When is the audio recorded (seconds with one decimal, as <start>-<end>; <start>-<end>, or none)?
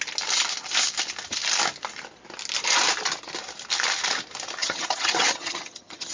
0.0-4.6